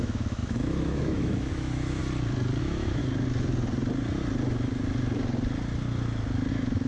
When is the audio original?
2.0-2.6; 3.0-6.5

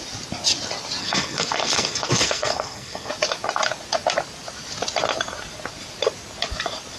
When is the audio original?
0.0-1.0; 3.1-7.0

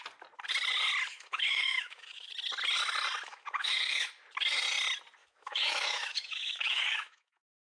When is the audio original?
0.0-1.1; 2.3-3.3; 4.1-5.2

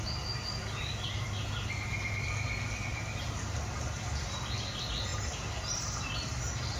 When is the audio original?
0.0-2.9; 3.6-5.1; 6.1-6.8